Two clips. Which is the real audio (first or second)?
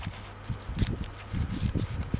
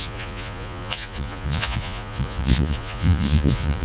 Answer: first